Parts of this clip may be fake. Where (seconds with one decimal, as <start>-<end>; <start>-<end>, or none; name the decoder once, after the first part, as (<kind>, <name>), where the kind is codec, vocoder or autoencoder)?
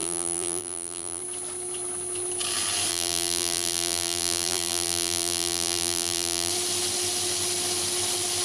0.0-1.2 (vocoder, BigVGAN v2); 2.9-6.5